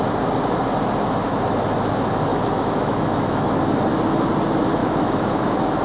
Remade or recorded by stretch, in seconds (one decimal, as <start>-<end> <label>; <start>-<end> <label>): 0.0-2.3 recorded; 2.3-3.6 remade; 3.6-4.8 recorded; 4.8-5.8 remade